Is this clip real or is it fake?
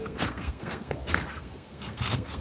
fake